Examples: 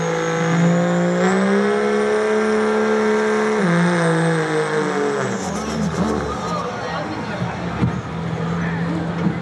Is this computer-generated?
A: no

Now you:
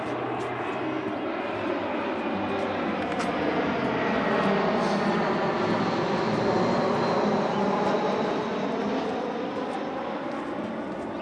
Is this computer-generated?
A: no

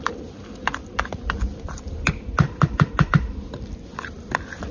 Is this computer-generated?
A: no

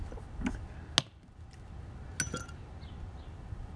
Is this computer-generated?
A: no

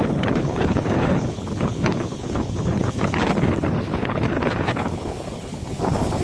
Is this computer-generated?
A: yes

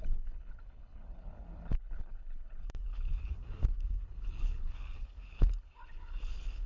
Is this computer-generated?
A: yes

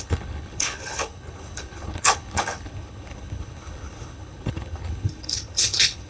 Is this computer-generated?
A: yes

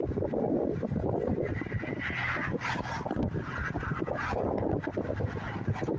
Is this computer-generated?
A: no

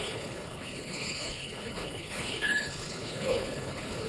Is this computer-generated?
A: yes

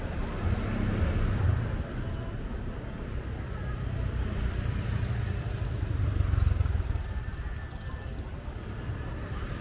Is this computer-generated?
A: no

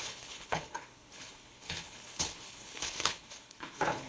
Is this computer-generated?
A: yes